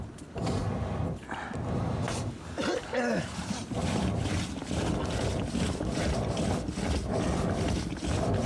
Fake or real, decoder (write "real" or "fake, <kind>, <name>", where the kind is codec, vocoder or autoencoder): real